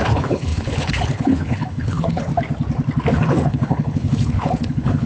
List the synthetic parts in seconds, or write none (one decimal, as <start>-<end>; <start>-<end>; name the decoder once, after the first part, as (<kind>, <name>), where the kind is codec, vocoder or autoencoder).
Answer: 0.0-2.3 (codec, HILCodec); 3.1-5.1